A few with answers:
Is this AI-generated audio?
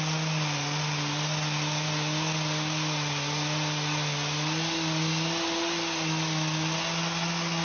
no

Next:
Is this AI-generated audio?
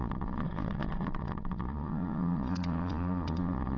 yes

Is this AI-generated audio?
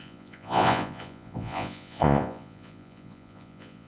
yes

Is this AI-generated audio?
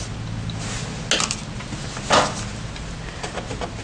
no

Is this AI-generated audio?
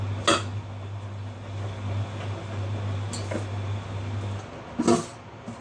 no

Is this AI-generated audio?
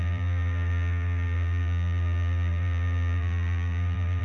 yes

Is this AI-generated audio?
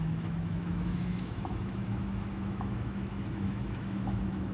yes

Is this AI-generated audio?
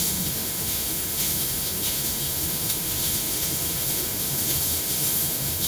yes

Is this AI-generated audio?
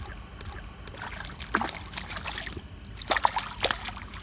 no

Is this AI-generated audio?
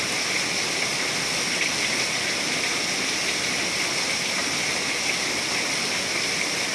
no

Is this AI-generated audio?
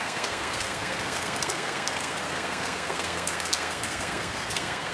yes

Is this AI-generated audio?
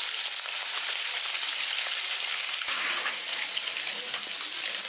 no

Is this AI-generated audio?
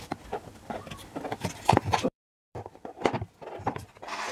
yes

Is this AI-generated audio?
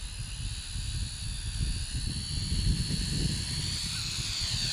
no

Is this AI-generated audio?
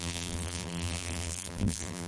yes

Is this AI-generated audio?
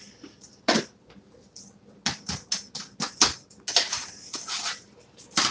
no